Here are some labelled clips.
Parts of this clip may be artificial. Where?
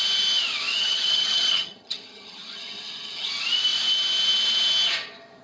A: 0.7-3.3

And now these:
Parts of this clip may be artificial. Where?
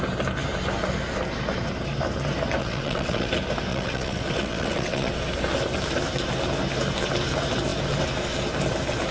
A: 2.6-3.3; 3.7-5.1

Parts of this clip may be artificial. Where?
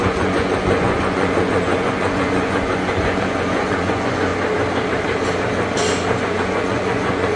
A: 0.0-4.3; 6.2-7.4